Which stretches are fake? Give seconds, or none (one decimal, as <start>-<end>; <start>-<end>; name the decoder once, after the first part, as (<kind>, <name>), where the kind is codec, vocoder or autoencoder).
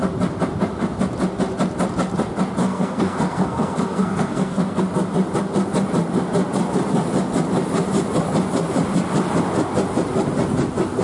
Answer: 2.6-4.8 (codec, SNAC)